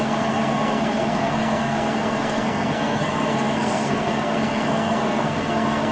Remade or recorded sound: remade